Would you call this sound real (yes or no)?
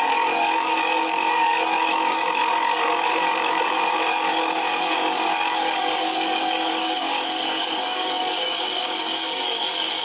no